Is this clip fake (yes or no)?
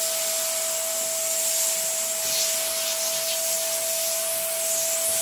no